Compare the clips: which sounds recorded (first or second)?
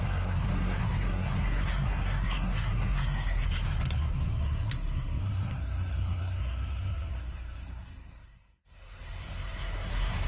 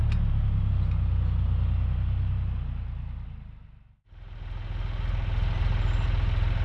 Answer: second